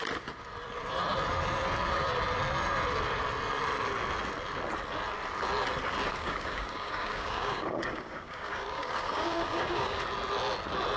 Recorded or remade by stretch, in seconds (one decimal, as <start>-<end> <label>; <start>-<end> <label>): 0.0-6.2 recorded; 6.2-10.0 remade; 10.0-11.0 recorded